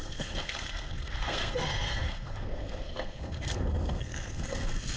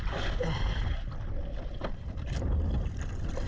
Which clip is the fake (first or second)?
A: first